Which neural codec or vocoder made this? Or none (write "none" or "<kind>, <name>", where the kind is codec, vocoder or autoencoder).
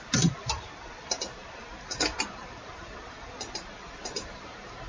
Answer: none